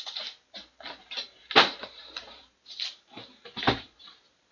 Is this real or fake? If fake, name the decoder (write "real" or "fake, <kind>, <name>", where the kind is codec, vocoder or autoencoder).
fake, vocoder, BigVGAN v2